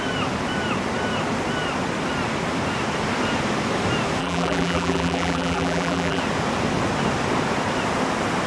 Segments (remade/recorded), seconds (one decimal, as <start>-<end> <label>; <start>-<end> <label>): 0.0-4.2 recorded; 4.2-6.2 remade; 6.2-8.5 recorded